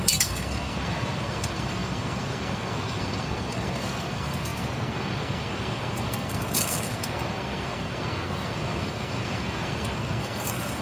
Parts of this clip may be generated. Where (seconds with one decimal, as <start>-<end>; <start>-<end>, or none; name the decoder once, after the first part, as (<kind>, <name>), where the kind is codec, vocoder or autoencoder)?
0.0-10.8 (codec, SNAC)